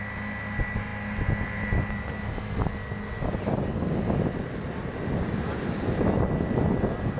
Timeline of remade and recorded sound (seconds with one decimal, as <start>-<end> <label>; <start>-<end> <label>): 0.0-7.2 recorded

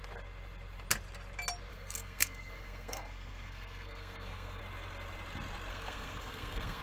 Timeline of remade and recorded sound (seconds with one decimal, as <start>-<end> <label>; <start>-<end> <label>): 0.0-1.7 recorded; 1.7-4.6 remade; 4.6-5.7 recorded; 5.7-6.8 remade

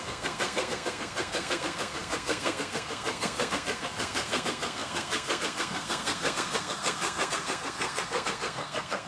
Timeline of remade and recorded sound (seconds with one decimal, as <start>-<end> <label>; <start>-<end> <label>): 0.0-9.1 remade

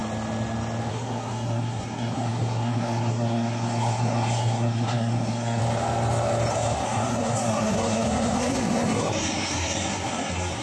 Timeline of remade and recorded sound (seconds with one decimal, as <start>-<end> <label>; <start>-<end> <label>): 0.0-0.9 recorded; 0.9-5.6 remade; 5.6-6.5 recorded; 6.5-10.6 remade

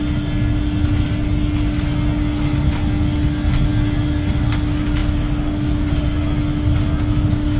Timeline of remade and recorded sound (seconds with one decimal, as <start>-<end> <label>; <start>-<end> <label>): 0.0-7.6 recorded

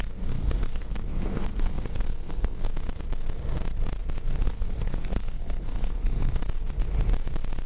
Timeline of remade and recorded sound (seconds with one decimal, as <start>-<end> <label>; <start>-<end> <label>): 0.0-2.7 remade; 2.7-4.4 recorded; 4.4-6.4 remade; 6.4-7.7 recorded

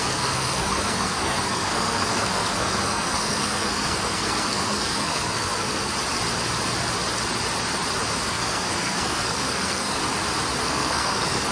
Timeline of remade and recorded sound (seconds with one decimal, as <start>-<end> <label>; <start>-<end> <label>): 0.0-5.9 remade; 5.9-8.3 recorded; 8.3-10.0 remade; 10.0-10.6 recorded; 10.6-11.5 remade

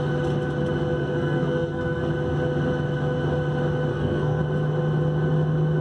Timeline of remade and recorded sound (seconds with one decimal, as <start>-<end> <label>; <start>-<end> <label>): 0.0-1.0 recorded; 1.0-2.1 remade; 2.1-3.9 recorded; 3.9-4.4 remade; 4.4-5.8 recorded